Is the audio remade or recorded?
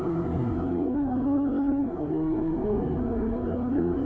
remade